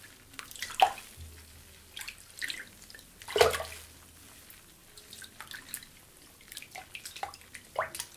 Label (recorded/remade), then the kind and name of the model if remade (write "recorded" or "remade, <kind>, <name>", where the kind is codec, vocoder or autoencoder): recorded